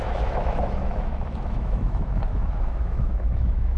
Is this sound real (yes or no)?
no